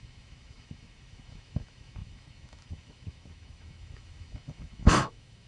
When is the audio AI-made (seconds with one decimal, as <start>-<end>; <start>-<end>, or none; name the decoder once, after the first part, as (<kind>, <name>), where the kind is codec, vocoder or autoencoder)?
0.0-5.5 (autoencoder, DAC-VAE)